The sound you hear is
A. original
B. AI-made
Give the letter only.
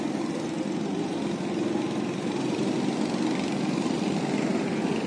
A